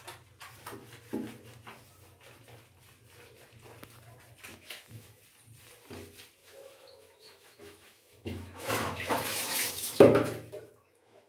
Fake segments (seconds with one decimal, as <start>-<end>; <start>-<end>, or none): 4.5-5.2; 6.4-11.3